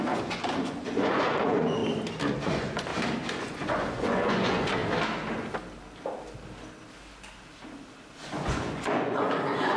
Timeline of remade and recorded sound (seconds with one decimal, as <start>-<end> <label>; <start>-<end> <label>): 0.0-1.8 remade; 1.8-2.4 recorded; 2.4-2.9 remade; 2.9-3.4 recorded; 3.4-4.8 remade; 4.8-8.2 recorded; 8.2-9.8 remade